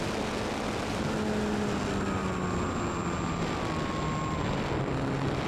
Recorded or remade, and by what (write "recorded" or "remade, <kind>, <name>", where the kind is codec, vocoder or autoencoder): recorded